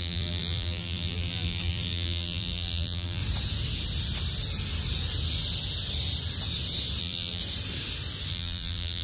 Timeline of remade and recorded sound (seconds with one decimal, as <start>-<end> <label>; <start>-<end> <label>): 0.0-3.2 remade; 3.2-7.0 recorded; 7.0-7.4 remade; 7.4-8.3 recorded; 8.3-9.0 remade